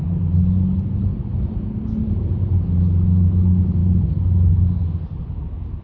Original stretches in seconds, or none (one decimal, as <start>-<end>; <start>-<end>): 0.0-5.8